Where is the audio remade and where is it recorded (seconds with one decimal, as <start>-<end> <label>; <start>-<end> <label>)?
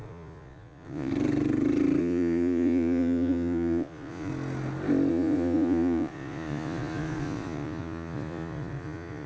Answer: 0.0-1.1 remade; 1.1-2.0 recorded; 2.0-4.3 remade; 4.3-5.1 recorded; 5.1-9.3 remade